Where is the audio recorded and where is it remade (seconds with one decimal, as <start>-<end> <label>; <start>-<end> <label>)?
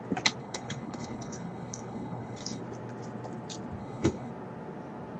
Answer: 0.0-0.4 recorded; 0.4-2.6 remade; 2.6-3.8 recorded; 3.8-4.3 remade; 4.3-5.2 recorded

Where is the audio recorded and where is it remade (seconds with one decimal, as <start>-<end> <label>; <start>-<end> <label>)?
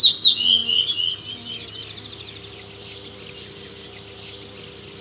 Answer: 0.0-5.0 recorded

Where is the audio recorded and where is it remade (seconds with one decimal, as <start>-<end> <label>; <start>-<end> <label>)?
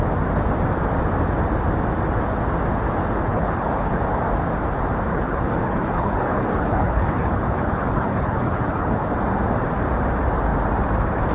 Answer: 0.0-3.3 recorded; 3.3-4.0 remade; 4.0-5.1 recorded; 5.1-9.1 remade; 9.1-11.3 recorded